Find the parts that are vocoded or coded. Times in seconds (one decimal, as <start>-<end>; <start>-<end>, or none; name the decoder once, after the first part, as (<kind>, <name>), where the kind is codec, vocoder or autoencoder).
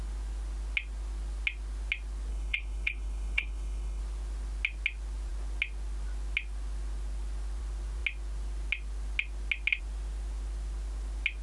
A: 2.3-4.0 (codec, HILCodec)